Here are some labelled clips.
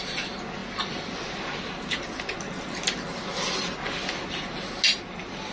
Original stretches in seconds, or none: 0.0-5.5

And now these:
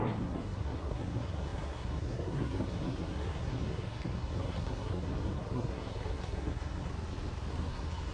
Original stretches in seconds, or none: 6.9-7.5

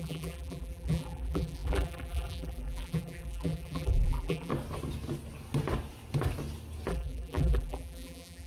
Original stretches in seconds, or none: 4.5-6.9

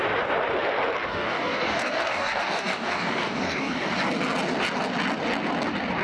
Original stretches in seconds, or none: 0.0-1.1; 3.9-6.0